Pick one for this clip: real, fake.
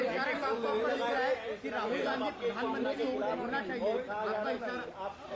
real